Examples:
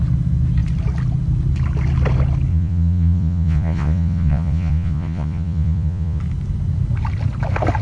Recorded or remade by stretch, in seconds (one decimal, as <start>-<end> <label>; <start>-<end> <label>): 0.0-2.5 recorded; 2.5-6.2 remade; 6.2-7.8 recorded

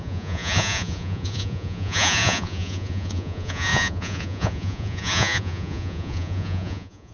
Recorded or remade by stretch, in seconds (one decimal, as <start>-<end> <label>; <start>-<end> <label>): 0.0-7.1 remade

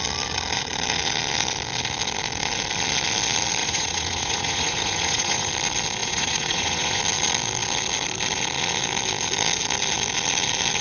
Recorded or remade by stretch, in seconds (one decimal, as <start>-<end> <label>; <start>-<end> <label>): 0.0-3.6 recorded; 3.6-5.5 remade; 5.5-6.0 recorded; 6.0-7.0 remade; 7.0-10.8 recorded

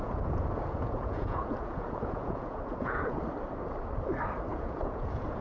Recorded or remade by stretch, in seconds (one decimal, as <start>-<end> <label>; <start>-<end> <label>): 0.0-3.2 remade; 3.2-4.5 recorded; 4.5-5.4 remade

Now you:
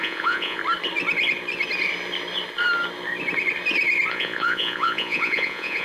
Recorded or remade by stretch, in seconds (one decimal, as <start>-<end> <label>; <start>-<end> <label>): 0.0-0.6 remade; 0.6-4.1 recorded; 4.1-5.8 remade